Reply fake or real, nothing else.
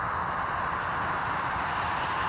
real